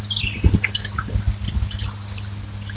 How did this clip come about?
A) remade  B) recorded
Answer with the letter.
B